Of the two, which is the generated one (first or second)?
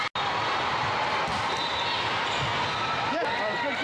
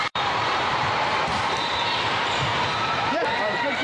second